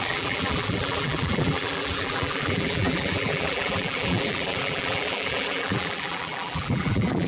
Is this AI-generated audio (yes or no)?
yes